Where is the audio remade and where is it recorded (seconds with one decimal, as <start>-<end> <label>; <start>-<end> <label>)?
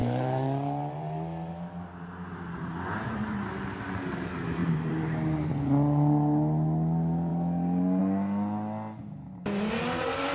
0.0-3.5 remade; 3.5-4.6 recorded; 4.6-5.5 remade; 5.5-10.3 recorded